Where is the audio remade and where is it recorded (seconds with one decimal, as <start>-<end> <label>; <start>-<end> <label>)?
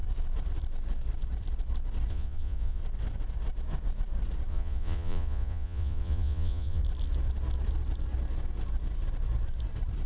0.0-2.1 recorded; 2.1-2.8 remade; 2.8-4.5 recorded; 4.5-6.8 remade; 6.8-10.1 recorded